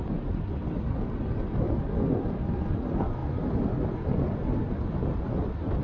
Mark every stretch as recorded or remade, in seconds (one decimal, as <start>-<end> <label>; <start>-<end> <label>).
0.0-5.8 recorded